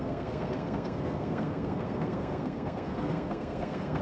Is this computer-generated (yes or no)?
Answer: yes